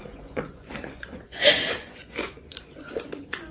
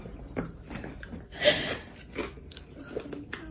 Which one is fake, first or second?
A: first